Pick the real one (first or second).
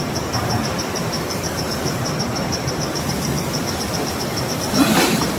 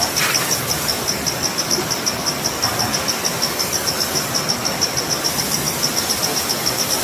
second